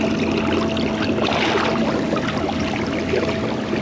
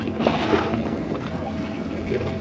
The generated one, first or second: second